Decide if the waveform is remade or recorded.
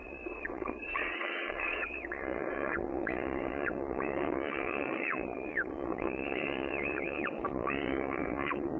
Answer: remade